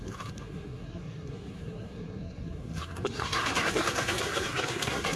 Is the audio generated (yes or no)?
yes